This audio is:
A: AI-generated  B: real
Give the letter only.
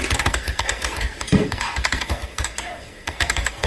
A